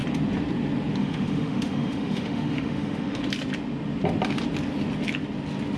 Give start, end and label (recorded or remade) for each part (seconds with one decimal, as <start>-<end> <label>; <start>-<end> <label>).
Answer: 0.0-1.0 recorded; 1.0-3.2 remade; 3.2-5.8 recorded